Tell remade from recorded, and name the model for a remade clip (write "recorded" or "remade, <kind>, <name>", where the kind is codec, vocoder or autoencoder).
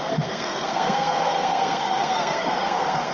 remade, codec, SNAC